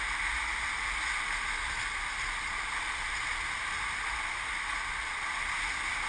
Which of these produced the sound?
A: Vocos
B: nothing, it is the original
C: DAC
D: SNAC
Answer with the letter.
B